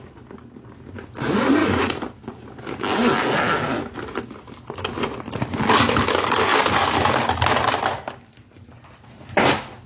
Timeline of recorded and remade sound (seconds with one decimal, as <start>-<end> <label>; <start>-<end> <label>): 0.0-9.9 recorded

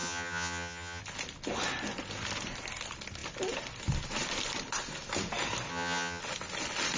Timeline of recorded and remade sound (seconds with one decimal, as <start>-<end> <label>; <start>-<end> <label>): 0.0-1.0 remade; 1.0-5.7 recorded; 5.7-6.2 remade; 6.2-7.0 recorded

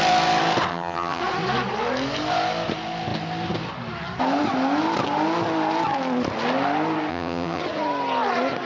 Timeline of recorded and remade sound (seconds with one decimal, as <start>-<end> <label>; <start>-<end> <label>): 0.0-0.7 recorded; 0.7-1.2 remade; 1.2-7.1 recorded; 7.1-7.6 remade; 7.6-8.7 recorded

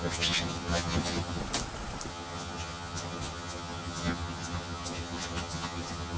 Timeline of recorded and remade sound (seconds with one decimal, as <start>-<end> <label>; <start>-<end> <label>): 0.0-1.4 remade; 1.4-2.1 recorded; 2.1-6.2 remade